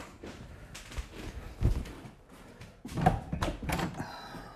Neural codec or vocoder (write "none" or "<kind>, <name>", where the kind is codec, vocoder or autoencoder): none